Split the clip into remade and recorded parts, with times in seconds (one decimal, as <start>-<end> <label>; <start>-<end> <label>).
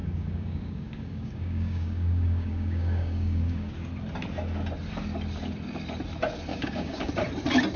0.0-3.7 remade; 3.7-6.5 recorded; 6.5-7.1 remade; 7.1-7.8 recorded